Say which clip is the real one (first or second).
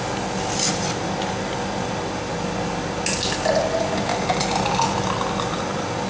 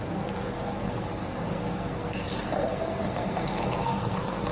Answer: first